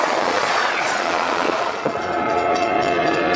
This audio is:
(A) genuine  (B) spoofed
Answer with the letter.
B